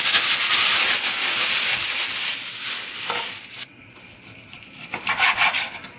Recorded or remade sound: recorded